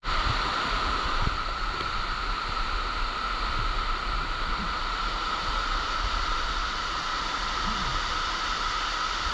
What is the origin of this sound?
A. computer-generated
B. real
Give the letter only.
A